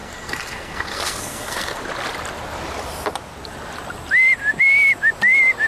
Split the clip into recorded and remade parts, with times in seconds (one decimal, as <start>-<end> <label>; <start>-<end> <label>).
0.0-1.8 remade; 1.8-5.7 recorded